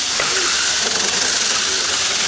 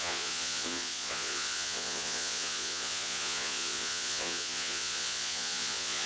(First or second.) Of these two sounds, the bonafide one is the first